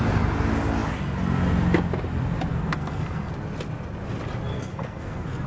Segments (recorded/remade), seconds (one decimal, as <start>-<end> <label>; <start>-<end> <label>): 0.0-2.5 recorded; 2.5-3.3 remade; 3.3-4.5 recorded; 4.5-5.5 remade

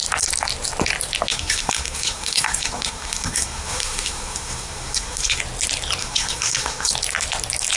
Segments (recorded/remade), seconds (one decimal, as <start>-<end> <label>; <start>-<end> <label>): 0.0-1.3 recorded; 1.3-5.4 remade; 5.4-6.0 recorded; 6.0-6.9 remade; 6.9-7.8 recorded

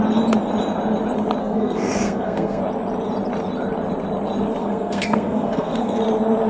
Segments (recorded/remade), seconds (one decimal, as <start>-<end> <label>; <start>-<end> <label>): 0.0-1.4 recorded; 1.4-2.6 remade; 2.6-4.6 recorded; 4.6-6.0 remade; 6.0-6.5 recorded

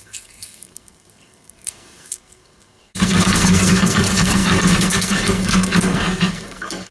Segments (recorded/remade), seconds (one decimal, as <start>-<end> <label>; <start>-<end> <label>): 0.0-6.9 remade

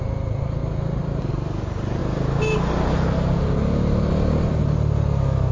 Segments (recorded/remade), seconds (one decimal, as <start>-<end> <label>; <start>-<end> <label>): 0.0-5.5 recorded

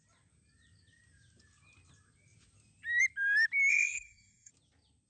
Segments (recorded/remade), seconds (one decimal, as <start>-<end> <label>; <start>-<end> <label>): 0.0-3.7 recorded; 3.7-4.5 remade; 4.5-5.1 recorded